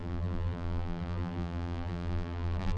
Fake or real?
fake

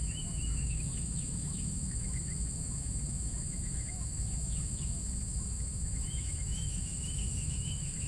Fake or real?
fake